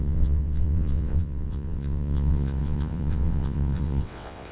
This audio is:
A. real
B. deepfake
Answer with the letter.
B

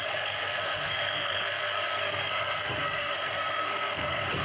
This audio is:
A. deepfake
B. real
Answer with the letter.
A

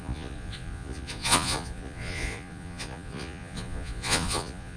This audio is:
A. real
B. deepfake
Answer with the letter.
B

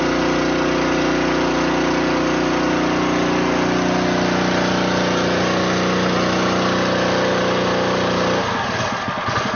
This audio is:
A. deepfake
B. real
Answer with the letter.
B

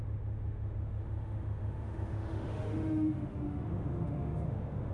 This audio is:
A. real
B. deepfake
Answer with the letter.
B